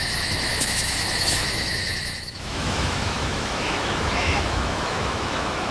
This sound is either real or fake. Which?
fake